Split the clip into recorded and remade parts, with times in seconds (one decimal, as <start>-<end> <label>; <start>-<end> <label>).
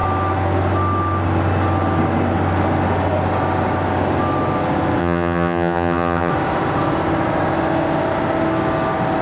0.0-5.0 recorded; 5.0-6.3 remade; 6.3-9.2 recorded